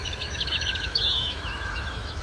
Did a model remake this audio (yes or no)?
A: yes